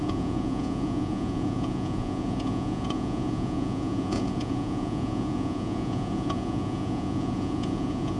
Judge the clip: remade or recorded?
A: remade